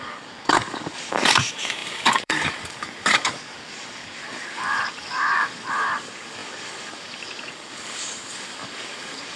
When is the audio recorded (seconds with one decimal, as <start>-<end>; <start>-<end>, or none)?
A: none

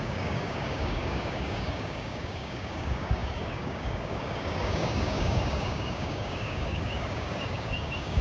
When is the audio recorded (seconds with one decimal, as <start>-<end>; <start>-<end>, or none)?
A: none

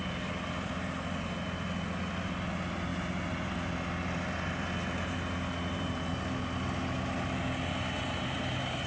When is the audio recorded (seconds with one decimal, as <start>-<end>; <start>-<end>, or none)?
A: 0.0-8.9

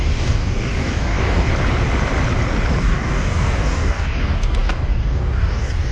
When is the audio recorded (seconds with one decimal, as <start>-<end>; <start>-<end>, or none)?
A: 1.5-2.8

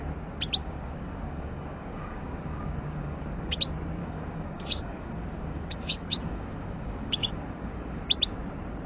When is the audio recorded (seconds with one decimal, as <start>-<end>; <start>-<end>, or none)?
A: 0.0-0.6; 3.6-4.0; 8.0-8.9

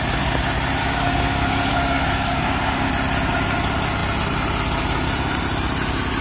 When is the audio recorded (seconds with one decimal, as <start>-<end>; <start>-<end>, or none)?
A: 0.0-0.8; 2.9-6.2

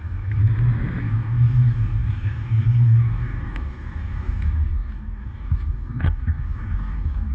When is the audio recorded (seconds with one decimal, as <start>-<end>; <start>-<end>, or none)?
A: 0.4-1.0